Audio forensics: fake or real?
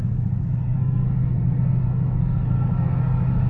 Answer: fake